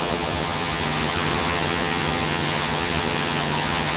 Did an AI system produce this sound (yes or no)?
yes